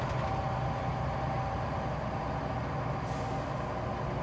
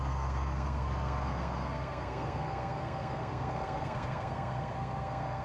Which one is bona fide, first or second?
first